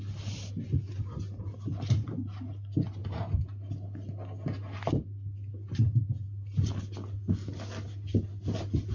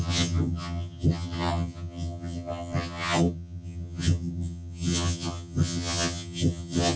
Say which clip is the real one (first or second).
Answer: first